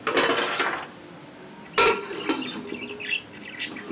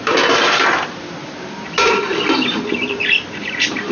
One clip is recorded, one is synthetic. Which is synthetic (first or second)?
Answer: second